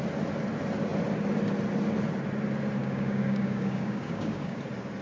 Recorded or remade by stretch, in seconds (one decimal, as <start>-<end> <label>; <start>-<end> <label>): 0.0-2.8 recorded; 2.8-4.6 remade; 4.6-5.0 recorded